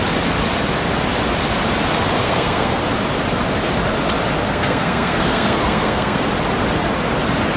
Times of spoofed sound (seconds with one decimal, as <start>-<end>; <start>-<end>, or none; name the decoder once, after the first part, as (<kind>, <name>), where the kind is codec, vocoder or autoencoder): 2.2-2.8 (codec, SNAC); 4.4-6.2